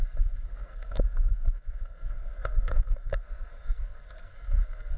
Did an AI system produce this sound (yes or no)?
yes